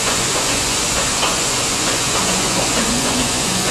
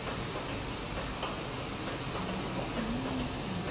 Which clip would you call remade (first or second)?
first